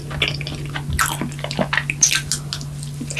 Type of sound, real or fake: real